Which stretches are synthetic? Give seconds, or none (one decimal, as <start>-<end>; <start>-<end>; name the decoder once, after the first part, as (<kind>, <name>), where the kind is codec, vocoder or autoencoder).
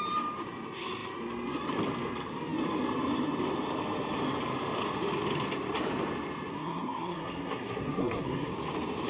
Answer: 6.5-8.5 (codec, SNAC)